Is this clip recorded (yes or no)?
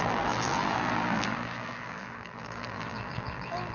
no